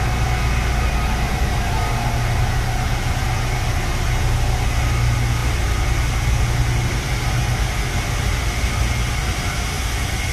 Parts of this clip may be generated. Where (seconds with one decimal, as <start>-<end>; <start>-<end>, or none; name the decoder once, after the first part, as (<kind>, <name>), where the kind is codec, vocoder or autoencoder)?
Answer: none